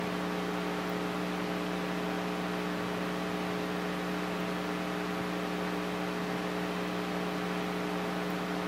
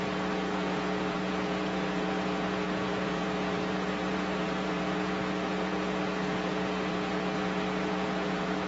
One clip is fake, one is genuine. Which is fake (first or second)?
second